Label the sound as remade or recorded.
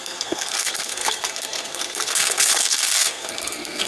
remade